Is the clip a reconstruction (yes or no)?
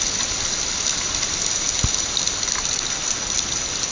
no